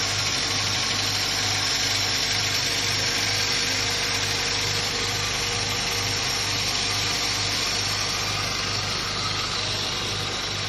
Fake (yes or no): no